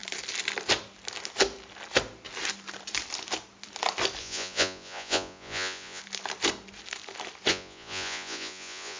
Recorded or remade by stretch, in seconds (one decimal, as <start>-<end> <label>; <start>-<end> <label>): 0.0-4.2 recorded; 4.2-6.0 remade; 6.0-7.5 recorded; 7.5-9.0 remade